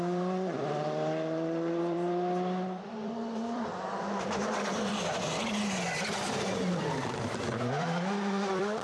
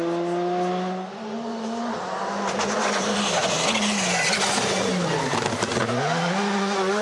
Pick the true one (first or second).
second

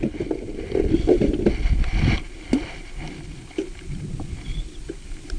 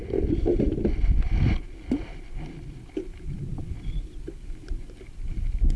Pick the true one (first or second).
second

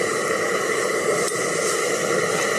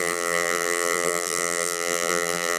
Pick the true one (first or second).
first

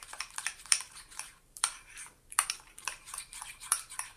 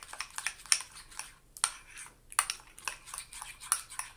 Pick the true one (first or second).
second